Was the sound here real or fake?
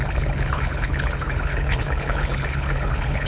fake